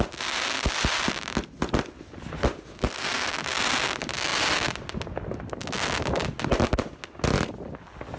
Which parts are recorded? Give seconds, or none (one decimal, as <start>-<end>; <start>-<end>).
0.0-8.2